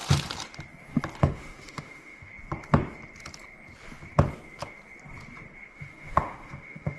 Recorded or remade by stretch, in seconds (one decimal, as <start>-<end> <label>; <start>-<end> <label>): 0.0-1.2 recorded; 1.2-2.3 remade; 2.3-5.7 recorded; 5.7-7.0 remade

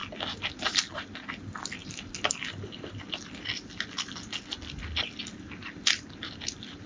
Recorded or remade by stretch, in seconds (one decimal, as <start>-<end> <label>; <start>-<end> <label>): 0.0-6.9 recorded